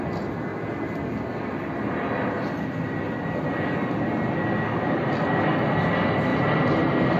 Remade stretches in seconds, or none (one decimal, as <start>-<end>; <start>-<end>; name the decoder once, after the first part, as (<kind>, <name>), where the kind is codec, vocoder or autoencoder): 6.3-7.2 (vocoder, BigVGAN v2)